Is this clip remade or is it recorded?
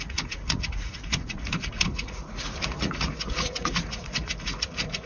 remade